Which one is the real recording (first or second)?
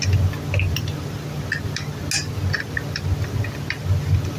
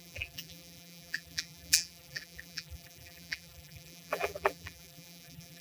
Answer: first